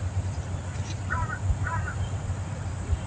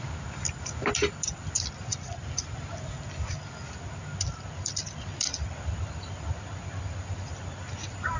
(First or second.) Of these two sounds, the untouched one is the second